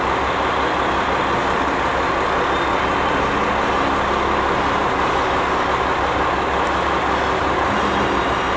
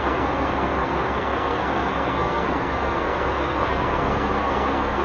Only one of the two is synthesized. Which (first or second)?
second